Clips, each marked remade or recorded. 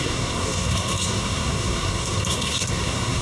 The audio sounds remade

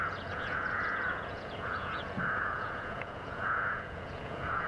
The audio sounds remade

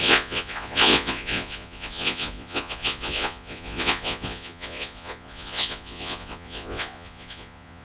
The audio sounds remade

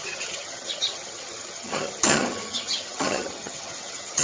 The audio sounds remade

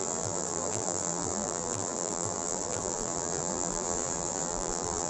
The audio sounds remade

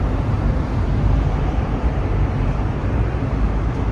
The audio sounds remade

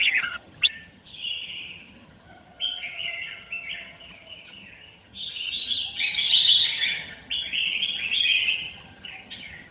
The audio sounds remade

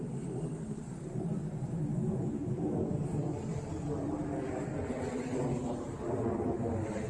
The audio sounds recorded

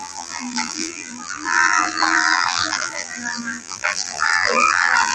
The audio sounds remade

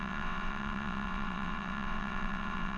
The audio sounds remade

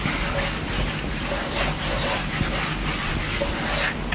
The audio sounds recorded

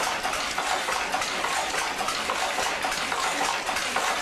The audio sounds remade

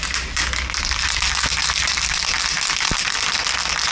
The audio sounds recorded